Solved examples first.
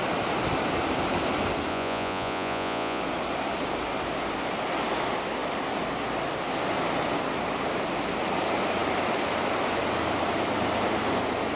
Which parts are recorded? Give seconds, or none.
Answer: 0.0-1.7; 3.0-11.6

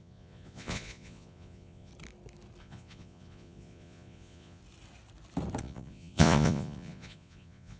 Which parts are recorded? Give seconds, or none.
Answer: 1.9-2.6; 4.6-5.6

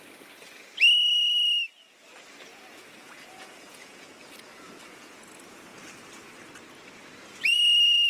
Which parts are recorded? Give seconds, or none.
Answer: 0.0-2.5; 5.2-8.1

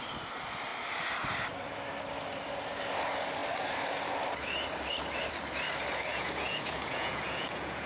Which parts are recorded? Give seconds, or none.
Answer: 0.0-6.1